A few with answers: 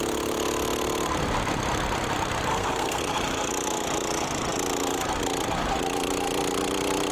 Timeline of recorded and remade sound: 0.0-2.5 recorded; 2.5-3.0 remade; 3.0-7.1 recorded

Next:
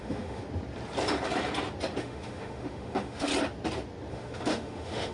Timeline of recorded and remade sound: 0.0-0.4 remade; 0.4-2.0 recorded; 2.0-3.3 remade; 3.3-4.1 recorded; 4.1-5.1 remade

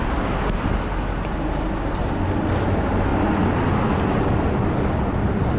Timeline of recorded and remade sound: 0.0-5.6 recorded

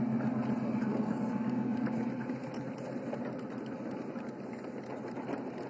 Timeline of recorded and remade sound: 0.0-0.9 recorded; 0.9-2.0 remade; 2.0-5.7 recorded

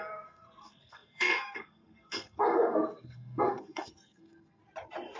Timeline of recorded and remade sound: 0.0-4.6 remade; 4.6-5.2 recorded

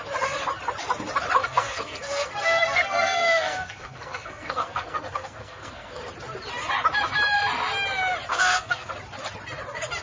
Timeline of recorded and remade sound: 0.0-1.4 recorded; 1.4-6.0 remade; 6.0-8.3 recorded; 8.3-8.9 remade; 8.9-10.0 recorded